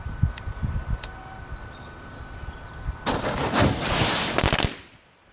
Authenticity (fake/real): real